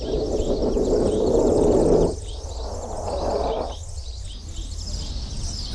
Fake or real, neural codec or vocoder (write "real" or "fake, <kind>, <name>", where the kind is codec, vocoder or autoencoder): real